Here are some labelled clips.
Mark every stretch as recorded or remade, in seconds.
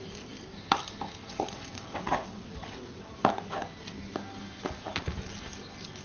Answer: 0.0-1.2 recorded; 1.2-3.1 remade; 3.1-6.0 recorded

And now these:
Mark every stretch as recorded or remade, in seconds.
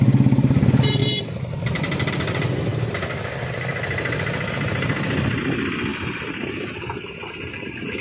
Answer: 0.0-1.0 recorded; 1.0-2.1 remade; 2.1-8.0 recorded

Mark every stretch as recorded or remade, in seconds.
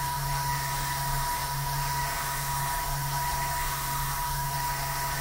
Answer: 0.0-5.2 remade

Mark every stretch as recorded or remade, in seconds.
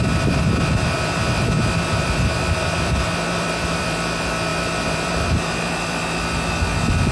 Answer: 0.0-1.2 remade; 1.2-1.8 recorded; 1.8-7.1 remade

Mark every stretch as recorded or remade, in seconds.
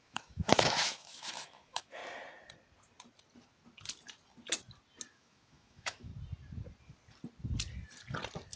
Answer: 0.0-2.0 remade; 2.0-5.1 recorded; 5.1-6.1 remade; 6.1-8.6 recorded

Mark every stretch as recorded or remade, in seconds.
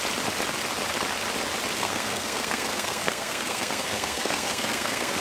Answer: 0.0-1.8 recorded; 1.8-5.2 remade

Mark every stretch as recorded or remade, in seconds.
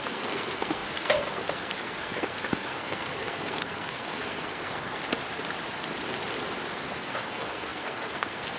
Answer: 0.0-5.0 remade; 5.0-6.7 recorded; 6.7-8.6 remade